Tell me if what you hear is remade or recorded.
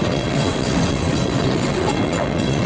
remade